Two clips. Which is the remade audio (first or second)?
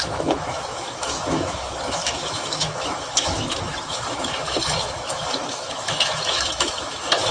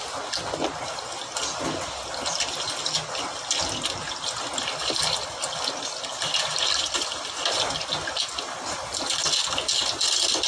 first